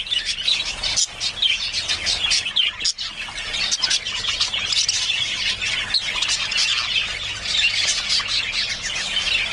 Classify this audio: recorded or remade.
recorded